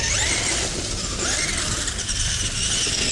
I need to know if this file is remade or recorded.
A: recorded